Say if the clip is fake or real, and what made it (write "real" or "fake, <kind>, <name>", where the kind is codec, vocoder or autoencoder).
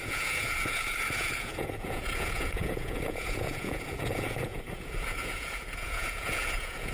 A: fake, vocoder, Vocos